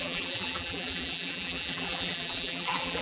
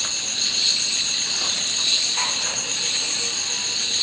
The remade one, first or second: first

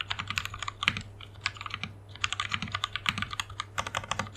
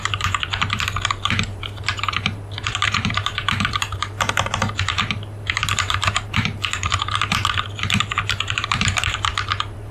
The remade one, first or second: second